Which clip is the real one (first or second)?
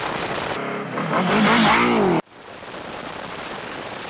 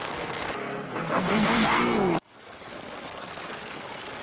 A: first